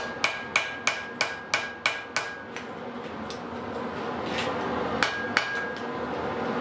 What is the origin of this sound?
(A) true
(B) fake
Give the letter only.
A